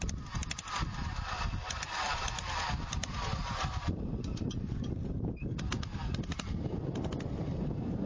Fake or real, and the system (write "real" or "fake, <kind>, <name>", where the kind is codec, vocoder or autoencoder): fake, vocoder, BigVGAN v2